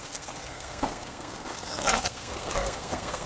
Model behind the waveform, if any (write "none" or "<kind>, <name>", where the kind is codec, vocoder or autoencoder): codec, SNAC